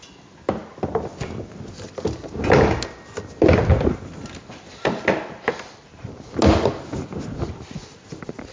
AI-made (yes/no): no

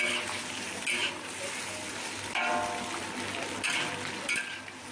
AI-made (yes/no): no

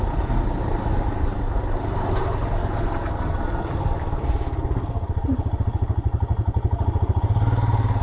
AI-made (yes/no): no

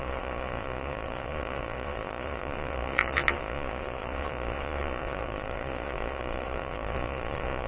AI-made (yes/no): yes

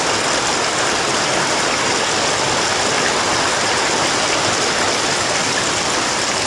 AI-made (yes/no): no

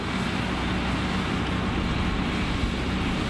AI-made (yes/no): no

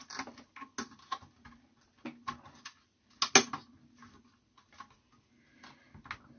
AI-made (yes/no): no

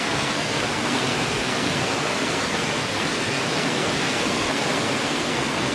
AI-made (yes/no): yes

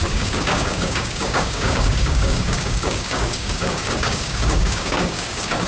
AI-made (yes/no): yes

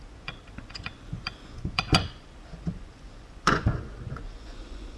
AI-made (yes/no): yes